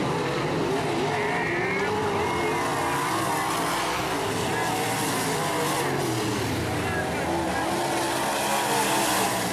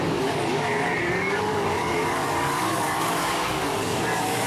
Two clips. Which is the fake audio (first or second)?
second